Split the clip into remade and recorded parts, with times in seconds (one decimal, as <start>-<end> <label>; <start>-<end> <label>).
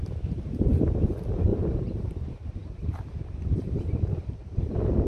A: 0.0-1.5 recorded; 1.5-4.6 remade; 4.6-5.1 recorded